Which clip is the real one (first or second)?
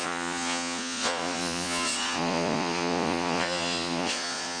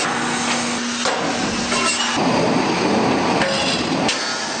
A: second